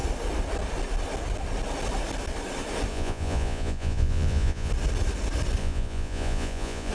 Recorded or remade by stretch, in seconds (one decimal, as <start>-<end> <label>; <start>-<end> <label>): 0.0-2.9 recorded; 2.9-4.7 remade; 4.7-5.6 recorded; 5.6-6.9 remade